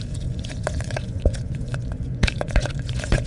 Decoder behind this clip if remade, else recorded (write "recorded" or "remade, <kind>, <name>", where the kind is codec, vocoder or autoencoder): remade, vocoder, Vocos